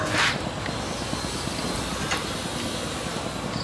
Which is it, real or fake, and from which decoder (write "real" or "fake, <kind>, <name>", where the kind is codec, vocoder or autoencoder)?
real